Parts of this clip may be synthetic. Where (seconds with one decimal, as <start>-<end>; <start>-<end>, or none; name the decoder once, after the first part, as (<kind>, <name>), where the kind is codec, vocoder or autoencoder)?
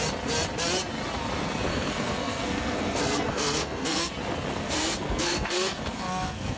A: 1.7-4.1 (codec, SNAC); 4.5-6.6